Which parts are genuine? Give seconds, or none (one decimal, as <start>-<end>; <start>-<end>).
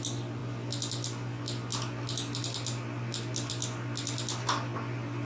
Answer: 0.0-5.2